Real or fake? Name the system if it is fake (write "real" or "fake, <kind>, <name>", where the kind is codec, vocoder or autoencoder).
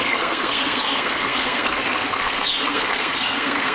fake, codec, SNAC